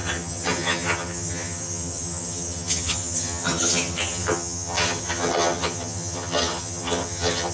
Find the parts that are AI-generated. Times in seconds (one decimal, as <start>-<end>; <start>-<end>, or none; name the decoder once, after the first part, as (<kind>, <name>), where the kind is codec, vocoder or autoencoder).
0.0-7.5 (vocoder, HiFi-GAN)